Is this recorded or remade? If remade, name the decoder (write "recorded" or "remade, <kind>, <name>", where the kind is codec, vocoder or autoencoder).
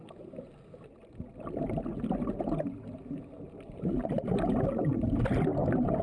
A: recorded